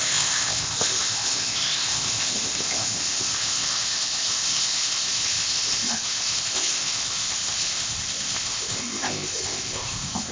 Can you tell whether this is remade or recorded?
remade